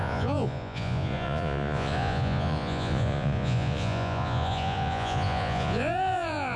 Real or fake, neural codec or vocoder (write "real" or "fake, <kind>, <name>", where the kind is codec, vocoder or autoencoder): fake, vocoder, Vocos